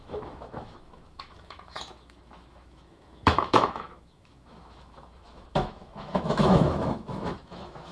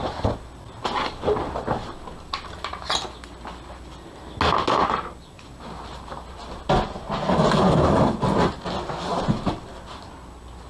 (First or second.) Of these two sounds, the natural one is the second